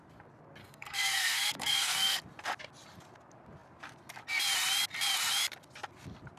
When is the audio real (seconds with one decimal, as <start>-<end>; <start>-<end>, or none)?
0.0-0.6; 2.2-6.4